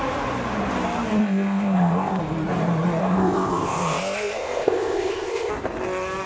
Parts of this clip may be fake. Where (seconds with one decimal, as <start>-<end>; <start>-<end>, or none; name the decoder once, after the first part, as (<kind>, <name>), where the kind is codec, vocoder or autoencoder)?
1.2-2.2 (codec, ZipCodec); 3.0-5.5